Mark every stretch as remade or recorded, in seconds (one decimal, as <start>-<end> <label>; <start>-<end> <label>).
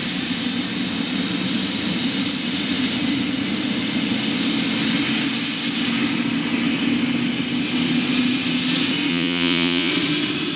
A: 0.0-9.1 recorded; 9.1-9.9 remade; 9.9-10.6 recorded